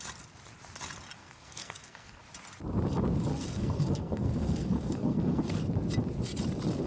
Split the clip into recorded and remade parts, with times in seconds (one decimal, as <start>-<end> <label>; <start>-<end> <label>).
0.0-1.2 recorded; 1.2-2.2 remade; 2.2-3.3 recorded; 3.3-5.6 remade; 5.6-6.9 recorded